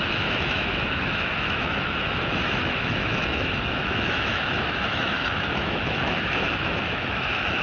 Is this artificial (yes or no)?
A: yes